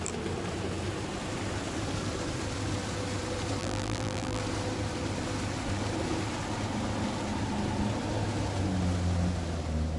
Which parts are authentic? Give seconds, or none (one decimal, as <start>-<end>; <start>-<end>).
0.0-3.6; 4.4-10.0